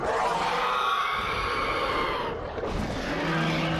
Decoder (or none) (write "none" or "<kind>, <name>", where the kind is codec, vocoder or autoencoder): none